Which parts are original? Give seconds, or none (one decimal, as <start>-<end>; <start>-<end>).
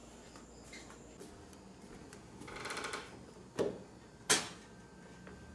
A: 0.0-5.5